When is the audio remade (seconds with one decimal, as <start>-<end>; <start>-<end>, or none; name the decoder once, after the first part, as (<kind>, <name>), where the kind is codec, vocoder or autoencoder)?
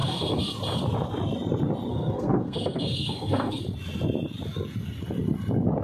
0.0-0.5 (codec, SNAC); 1.9-3.6